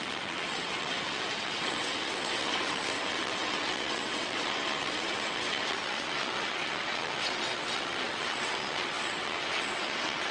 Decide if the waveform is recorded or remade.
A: remade